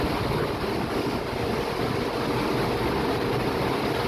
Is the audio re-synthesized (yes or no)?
no